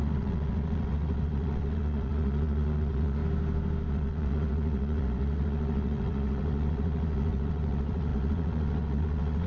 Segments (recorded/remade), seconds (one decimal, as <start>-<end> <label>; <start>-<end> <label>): 0.0-3.2 remade; 3.2-3.9 recorded; 3.9-9.5 remade